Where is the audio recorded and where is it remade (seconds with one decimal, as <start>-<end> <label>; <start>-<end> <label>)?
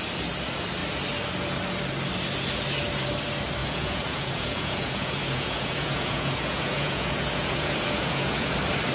0.0-3.6 recorded; 3.6-8.5 remade; 8.5-8.9 recorded